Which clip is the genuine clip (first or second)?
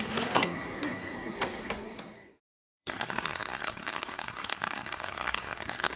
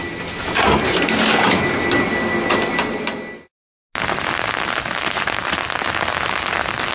second